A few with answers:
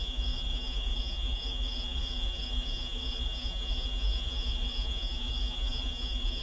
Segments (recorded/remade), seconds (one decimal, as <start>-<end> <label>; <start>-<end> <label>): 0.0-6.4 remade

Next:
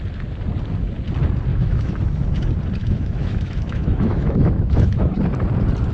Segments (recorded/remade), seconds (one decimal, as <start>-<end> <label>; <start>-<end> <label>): 0.0-1.5 recorded; 1.5-2.0 remade; 2.0-2.8 recorded; 2.8-5.1 remade; 5.1-5.9 recorded

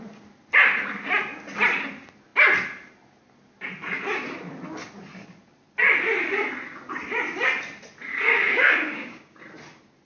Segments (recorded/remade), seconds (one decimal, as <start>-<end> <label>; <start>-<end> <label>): 0.0-8.1 recorded; 8.1-9.4 remade; 9.4-10.1 recorded

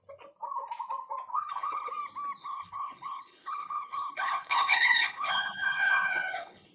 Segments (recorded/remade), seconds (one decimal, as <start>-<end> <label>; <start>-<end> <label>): 0.0-1.3 recorded; 1.3-1.9 remade; 1.9-2.4 recorded; 2.4-6.7 remade